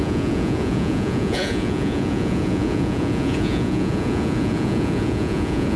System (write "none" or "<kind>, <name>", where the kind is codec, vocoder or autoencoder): vocoder, Vocos